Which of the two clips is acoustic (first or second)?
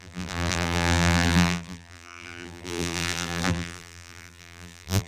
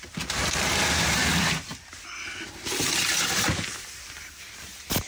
second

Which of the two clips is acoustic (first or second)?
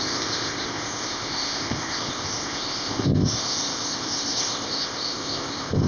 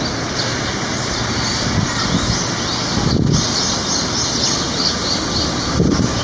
second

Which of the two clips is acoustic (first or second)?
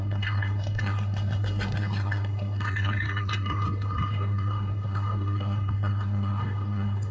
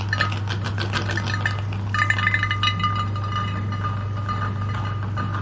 second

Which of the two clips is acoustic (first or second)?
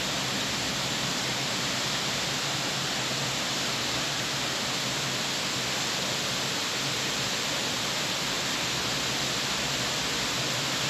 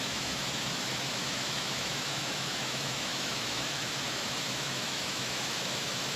first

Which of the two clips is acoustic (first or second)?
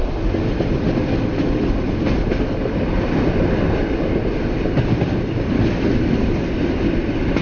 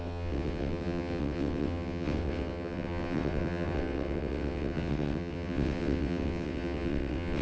first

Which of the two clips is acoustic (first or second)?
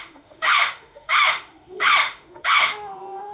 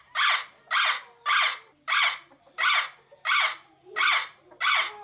second